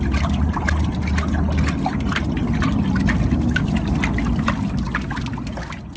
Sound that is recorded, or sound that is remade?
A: recorded